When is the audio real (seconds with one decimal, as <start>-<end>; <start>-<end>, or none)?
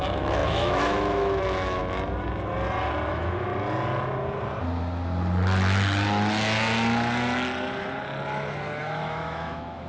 1.8-3.1; 3.5-8.8